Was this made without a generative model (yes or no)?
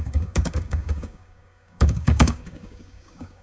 no